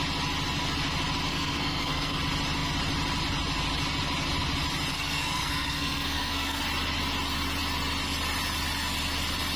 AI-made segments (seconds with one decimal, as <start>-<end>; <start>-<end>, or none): 1.3-2.2; 4.9-6.6